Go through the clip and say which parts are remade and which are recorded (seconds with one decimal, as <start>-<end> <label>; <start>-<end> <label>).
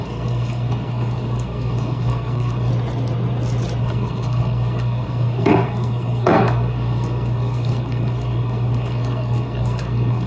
0.0-2.7 remade; 2.7-3.8 recorded; 3.8-10.3 remade